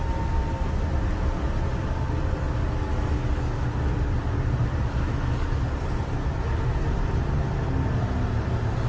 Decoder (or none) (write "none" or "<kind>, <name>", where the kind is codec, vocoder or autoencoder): none